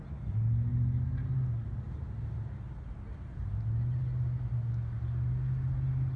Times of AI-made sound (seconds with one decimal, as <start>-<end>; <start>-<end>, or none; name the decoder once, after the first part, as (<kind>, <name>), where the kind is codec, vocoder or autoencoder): none